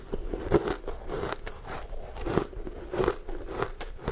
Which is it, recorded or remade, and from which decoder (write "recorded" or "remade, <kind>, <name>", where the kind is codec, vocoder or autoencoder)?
recorded